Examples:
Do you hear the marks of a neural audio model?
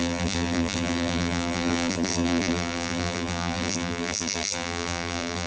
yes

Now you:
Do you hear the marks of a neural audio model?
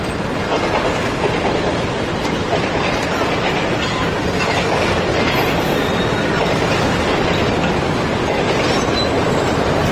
no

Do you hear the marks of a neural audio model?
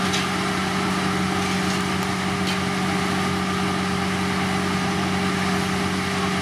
no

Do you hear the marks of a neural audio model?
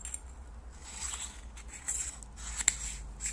no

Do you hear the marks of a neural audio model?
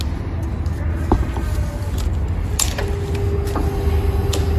no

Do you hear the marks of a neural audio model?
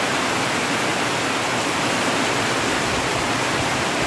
no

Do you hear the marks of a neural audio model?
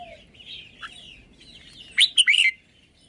no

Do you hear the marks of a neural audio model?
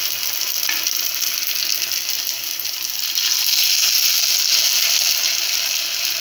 no